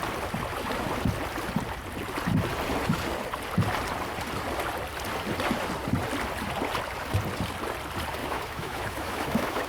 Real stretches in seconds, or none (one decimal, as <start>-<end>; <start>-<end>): 0.0-8.2